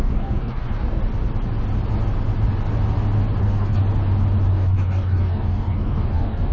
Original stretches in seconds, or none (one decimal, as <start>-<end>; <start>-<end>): 1.0-3.4; 3.8-4.5